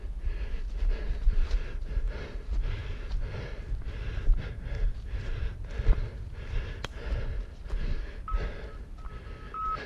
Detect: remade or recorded recorded